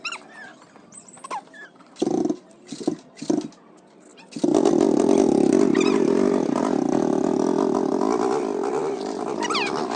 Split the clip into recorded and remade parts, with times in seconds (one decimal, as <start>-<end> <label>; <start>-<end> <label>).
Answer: 0.0-0.5 recorded; 0.5-2.2 remade; 2.2-10.0 recorded

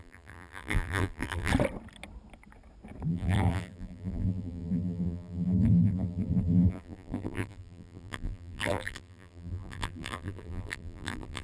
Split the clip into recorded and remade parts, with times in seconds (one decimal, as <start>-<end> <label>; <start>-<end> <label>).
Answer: 0.0-1.5 remade; 1.5-3.1 recorded; 3.1-11.4 remade

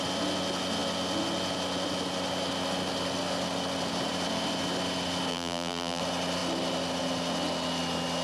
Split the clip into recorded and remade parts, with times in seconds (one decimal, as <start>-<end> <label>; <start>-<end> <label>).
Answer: 0.0-5.3 recorded; 5.3-6.0 remade; 6.0-8.2 recorded

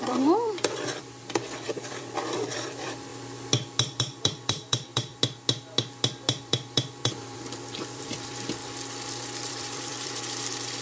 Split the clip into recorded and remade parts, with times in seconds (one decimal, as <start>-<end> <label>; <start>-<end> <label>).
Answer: 0.0-3.1 remade; 3.1-4.0 recorded; 4.0-5.1 remade; 5.1-6.4 recorded; 6.4-8.6 remade; 8.6-9.5 recorded; 9.5-10.8 remade

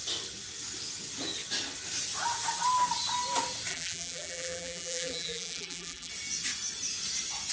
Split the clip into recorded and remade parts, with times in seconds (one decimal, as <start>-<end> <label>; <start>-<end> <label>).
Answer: 0.0-3.7 recorded; 3.7-6.1 remade; 6.1-7.5 recorded

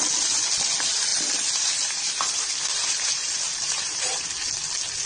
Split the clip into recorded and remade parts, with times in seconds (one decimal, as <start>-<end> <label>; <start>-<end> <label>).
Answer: 0.0-1.1 recorded; 1.1-4.2 remade; 4.2-5.1 recorded